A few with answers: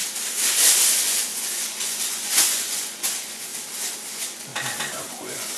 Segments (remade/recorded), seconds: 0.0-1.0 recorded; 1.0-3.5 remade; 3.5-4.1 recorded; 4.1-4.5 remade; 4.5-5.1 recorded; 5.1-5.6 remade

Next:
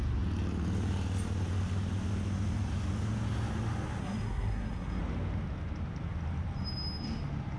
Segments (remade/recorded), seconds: 0.0-4.0 recorded; 4.0-5.0 remade; 5.0-7.6 recorded

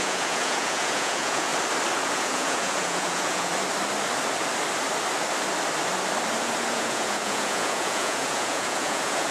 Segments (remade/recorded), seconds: 0.0-1.5 remade; 1.5-2.1 recorded; 2.1-3.5 remade; 3.5-6.7 recorded; 6.7-9.3 remade